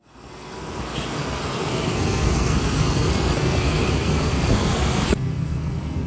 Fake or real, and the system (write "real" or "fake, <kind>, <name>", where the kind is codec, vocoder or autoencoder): fake, codec, SNAC